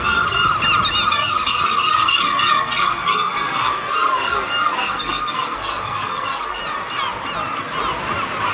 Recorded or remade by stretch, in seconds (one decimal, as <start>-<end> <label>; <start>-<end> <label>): 0.0-0.5 remade; 0.5-1.1 recorded; 1.1-6.6 remade; 6.6-8.5 recorded

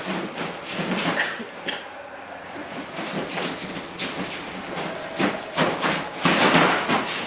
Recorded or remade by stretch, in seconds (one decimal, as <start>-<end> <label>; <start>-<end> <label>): 0.0-7.3 recorded